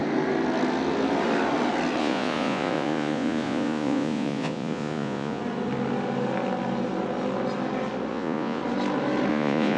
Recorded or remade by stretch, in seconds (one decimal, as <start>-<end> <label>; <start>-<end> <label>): 0.0-2.0 recorded; 2.0-5.4 remade; 5.4-8.1 recorded; 8.1-8.6 remade; 8.6-9.3 recorded; 9.3-9.8 remade